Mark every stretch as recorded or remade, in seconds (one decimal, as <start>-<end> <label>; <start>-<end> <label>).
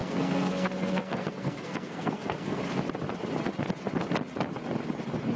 0.0-2.6 remade; 2.6-5.4 recorded